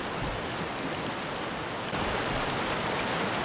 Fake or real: real